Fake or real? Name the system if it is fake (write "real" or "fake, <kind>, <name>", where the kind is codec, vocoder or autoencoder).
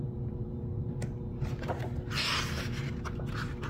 real